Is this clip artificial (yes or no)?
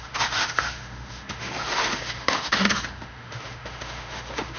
yes